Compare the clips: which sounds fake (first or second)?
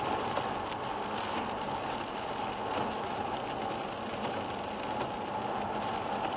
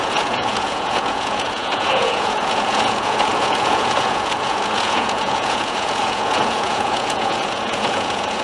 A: second